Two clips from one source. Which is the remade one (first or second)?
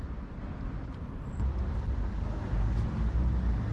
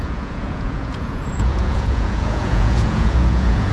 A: second